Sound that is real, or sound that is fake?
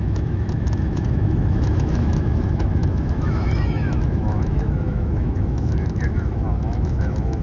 fake